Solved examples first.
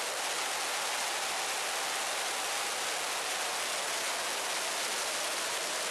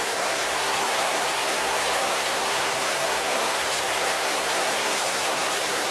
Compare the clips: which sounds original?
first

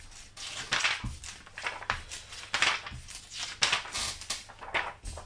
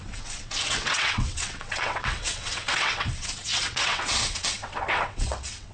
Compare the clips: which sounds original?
first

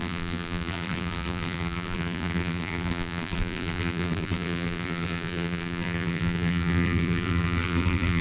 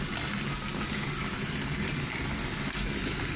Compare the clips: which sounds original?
second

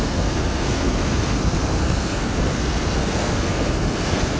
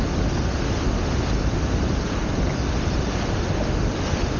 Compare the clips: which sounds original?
second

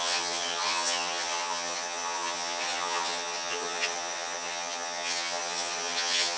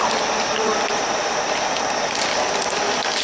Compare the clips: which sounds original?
second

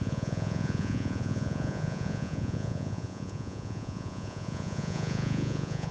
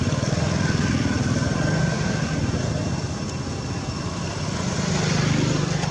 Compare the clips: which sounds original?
second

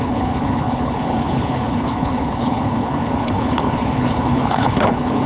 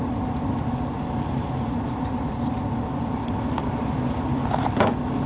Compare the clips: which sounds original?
second